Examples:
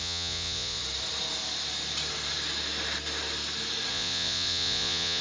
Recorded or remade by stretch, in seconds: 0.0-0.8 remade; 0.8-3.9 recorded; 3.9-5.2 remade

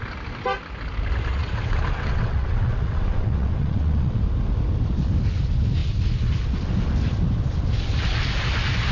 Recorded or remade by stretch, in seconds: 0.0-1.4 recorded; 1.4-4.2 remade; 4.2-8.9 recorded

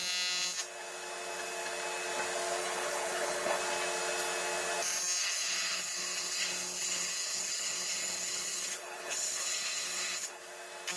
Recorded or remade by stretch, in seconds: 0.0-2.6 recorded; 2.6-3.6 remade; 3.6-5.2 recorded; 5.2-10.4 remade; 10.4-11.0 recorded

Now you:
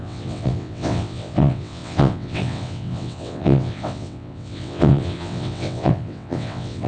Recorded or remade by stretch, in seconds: 0.0-6.9 remade

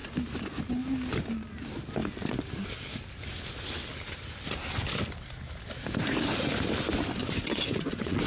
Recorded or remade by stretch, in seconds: 0.0-7.2 recorded; 7.2-8.3 remade

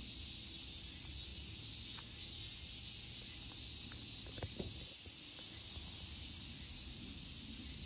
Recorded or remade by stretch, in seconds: 0.0-7.8 recorded

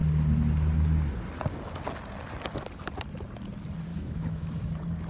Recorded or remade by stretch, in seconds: 0.0-3.9 recorded; 3.9-4.5 remade; 4.5-5.1 recorded

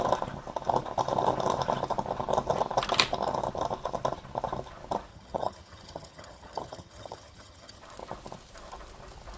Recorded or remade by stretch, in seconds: 0.0-5.1 recorded; 5.1-7.8 remade; 7.8-9.4 recorded